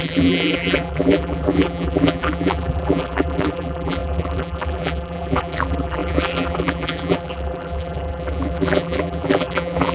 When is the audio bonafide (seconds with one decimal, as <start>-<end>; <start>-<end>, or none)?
none